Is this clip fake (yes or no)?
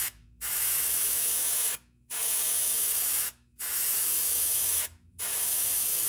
yes